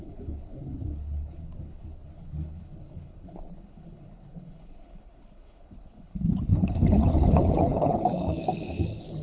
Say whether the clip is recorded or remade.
remade